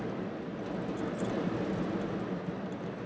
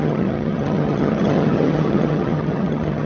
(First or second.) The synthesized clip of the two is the second